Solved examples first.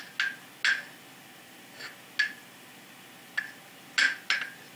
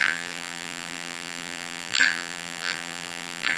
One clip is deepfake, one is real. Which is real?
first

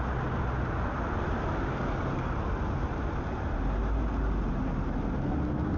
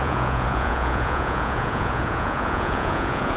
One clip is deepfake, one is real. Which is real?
first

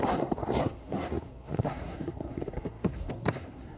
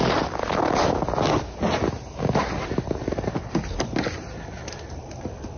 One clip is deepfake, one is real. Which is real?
second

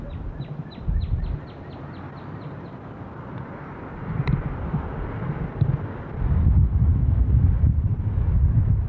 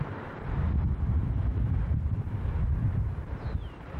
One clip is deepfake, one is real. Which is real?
first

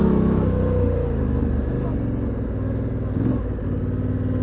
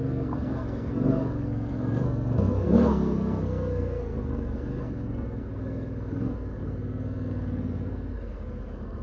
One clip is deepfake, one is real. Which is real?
first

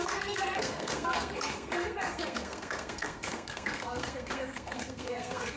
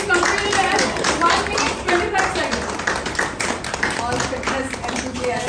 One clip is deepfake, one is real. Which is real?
second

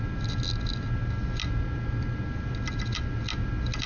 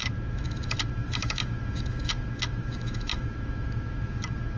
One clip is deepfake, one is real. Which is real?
first